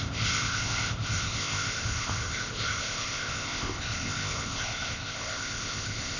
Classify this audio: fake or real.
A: fake